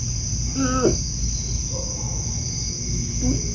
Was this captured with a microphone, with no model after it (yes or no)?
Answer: yes